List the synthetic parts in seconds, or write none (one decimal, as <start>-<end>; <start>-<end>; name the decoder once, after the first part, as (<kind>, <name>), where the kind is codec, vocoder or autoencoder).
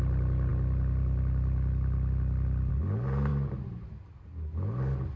none